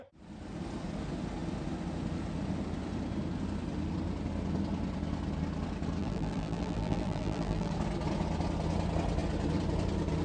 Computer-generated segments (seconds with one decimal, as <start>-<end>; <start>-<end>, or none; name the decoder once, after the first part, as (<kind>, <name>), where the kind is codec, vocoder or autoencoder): 6.0-7.7 (vocoder, BigVGAN v2)